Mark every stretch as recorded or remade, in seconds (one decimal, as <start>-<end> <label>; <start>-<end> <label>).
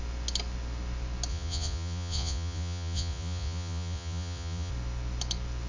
0.0-1.3 recorded; 1.3-4.7 remade; 4.7-5.7 recorded